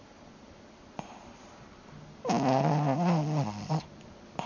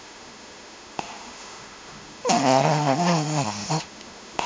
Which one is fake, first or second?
second